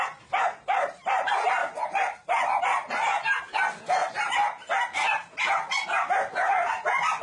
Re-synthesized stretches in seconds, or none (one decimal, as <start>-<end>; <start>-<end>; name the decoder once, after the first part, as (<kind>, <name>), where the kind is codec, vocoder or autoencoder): 0.0-1.6 (vocoder, BigVGAN v2); 2.6-4.0

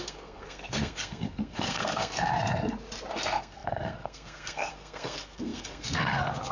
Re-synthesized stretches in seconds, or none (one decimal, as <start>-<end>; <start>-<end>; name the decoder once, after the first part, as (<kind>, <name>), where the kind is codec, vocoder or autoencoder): 0.0-2.4 (codec, SNAC); 3.1-6.5

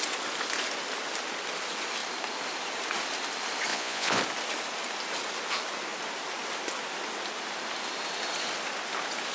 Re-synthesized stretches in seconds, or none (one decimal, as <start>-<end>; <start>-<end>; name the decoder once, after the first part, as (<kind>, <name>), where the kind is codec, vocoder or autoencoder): 3.7-4.2 (vocoder, Vocos)

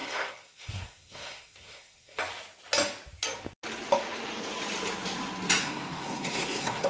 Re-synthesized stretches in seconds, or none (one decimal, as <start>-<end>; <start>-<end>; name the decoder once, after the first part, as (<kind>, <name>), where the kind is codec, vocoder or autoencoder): 0.0-2.2 (codec, SNAC); 5.6-6.9

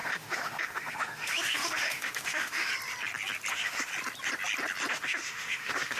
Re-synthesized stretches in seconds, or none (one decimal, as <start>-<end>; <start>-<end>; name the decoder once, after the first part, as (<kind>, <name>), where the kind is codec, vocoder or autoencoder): 0.0-2.7 (autoencoder, DAC-VAE); 3.5-3.9; 4.9-6.0

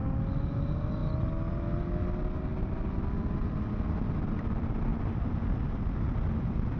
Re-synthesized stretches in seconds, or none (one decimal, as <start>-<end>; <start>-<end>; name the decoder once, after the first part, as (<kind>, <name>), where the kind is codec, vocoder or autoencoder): 1.0-1.8 (vocoder, BigVGAN v2); 4.9-5.8

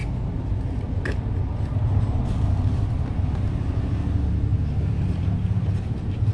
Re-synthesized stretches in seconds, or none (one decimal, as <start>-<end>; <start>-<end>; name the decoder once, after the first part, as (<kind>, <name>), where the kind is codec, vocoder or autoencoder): none